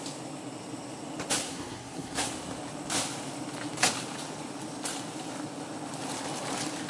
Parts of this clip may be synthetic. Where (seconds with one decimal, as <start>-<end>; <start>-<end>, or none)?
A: 1.4-2.3

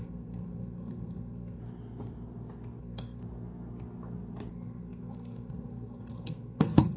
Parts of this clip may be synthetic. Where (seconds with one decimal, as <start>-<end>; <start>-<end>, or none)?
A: 0.0-1.6; 2.8-3.2; 4.5-7.0

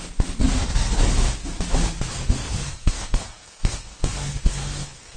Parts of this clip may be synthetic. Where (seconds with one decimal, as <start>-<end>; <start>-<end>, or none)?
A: 0.4-1.1; 2.1-5.2

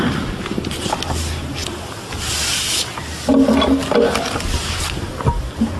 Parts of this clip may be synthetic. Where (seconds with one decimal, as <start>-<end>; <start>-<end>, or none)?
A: none

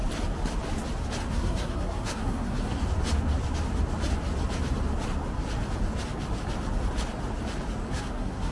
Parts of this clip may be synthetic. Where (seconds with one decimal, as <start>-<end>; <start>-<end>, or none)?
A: 1.3-2.8; 7.9-8.5

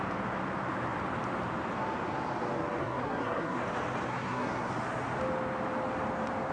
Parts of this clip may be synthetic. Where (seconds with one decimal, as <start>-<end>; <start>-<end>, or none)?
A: 2.8-3.6; 4.1-4.7

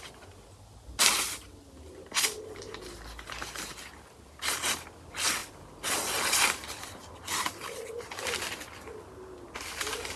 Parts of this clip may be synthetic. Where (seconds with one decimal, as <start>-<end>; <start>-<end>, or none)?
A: none